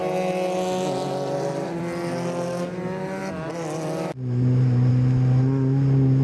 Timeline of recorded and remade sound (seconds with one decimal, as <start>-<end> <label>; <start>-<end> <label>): 0.0-6.2 recorded